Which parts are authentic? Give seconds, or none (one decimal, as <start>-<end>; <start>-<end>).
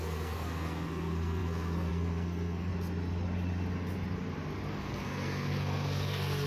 2.7-4.7